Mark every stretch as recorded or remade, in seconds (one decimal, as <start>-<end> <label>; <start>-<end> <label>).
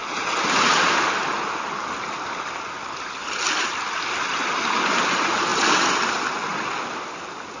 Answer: 0.0-7.6 recorded